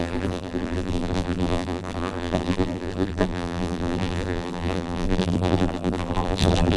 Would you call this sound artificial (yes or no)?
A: yes